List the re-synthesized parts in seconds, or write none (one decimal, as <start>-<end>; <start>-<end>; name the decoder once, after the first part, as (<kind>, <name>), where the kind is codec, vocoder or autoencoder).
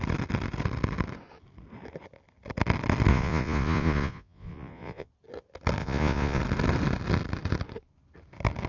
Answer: 3.1-5.1 (vocoder, Vocos); 5.8-6.4